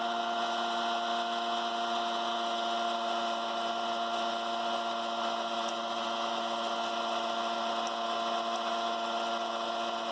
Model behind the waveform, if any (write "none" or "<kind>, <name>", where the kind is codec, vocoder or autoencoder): none